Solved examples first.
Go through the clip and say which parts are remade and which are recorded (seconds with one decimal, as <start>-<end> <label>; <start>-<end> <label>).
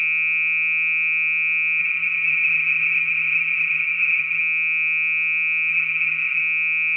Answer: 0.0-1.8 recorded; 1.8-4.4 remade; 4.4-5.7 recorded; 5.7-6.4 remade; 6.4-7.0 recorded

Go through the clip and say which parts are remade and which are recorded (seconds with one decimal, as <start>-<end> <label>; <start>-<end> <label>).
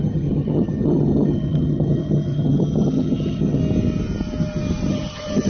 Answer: 0.0-3.6 remade; 3.6-4.9 recorded; 4.9-5.5 remade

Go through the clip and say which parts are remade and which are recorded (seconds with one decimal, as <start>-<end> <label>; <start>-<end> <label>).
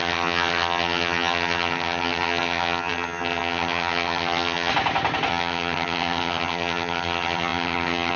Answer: 0.0-4.7 remade; 4.7-5.3 recorded; 5.3-8.2 remade